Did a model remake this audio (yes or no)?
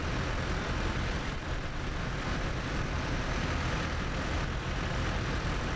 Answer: no